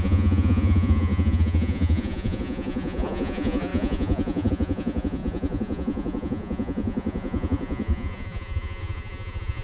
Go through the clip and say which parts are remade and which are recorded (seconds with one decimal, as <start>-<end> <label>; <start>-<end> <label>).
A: 0.0-9.6 remade